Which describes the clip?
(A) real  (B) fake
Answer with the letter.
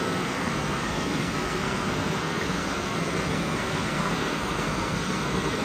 B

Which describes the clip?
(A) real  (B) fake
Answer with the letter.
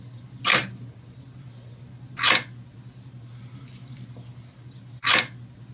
A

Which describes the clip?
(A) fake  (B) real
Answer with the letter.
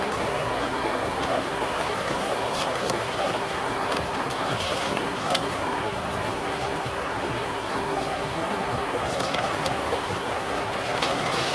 A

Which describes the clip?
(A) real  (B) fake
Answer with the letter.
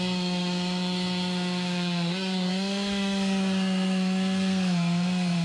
B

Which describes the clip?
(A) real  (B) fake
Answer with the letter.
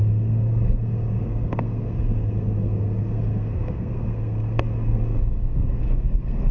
B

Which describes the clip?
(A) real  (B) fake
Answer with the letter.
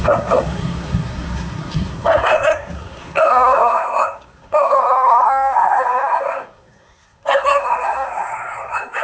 B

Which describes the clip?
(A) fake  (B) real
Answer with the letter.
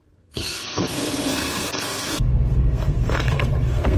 A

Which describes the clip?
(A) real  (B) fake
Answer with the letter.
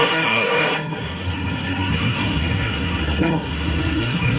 B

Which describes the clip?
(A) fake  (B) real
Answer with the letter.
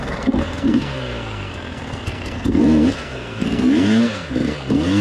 A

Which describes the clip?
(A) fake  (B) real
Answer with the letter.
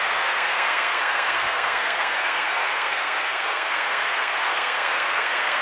A